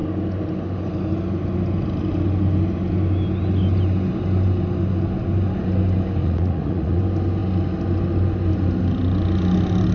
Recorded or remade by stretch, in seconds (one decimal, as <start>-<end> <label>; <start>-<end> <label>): 0.0-6.2 recorded; 6.2-7.0 remade; 7.0-9.9 recorded